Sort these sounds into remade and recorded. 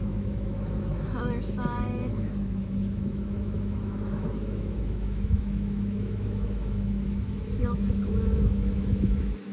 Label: remade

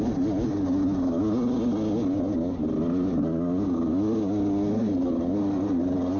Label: recorded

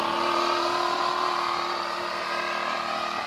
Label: recorded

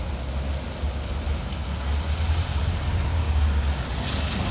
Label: recorded